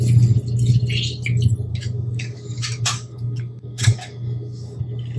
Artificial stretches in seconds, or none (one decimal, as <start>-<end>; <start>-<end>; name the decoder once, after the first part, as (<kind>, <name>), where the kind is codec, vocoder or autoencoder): 1.7-4.8 (codec, DAC)